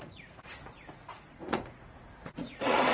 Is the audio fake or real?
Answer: fake